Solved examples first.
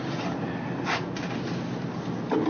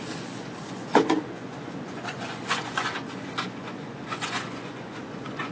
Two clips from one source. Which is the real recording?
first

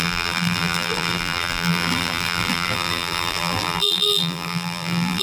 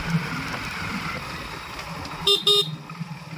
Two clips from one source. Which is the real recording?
second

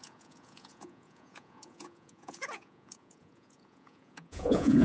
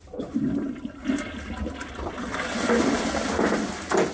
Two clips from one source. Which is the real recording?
second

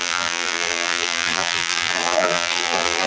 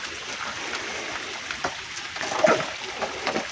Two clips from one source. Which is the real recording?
second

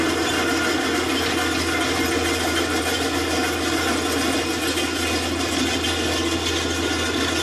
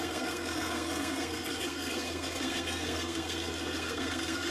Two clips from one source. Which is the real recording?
first